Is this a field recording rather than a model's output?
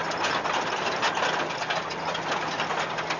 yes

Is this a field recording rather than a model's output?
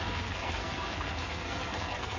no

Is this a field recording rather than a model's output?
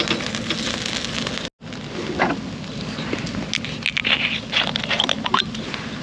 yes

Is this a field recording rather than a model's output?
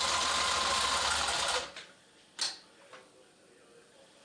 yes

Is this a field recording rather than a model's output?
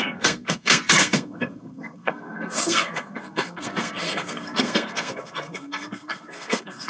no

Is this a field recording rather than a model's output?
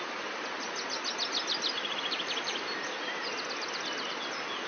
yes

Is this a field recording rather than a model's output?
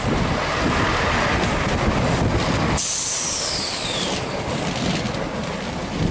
yes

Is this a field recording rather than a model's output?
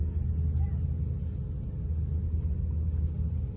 yes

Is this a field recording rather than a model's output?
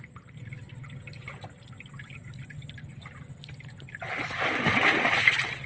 yes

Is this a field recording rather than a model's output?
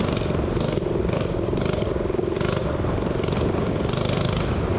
yes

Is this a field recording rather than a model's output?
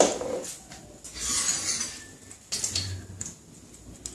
yes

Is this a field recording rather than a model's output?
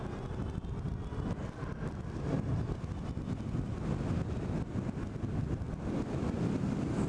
yes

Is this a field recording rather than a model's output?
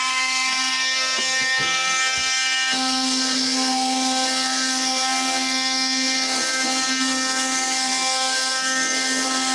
no